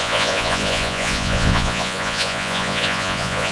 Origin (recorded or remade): remade